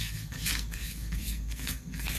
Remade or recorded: remade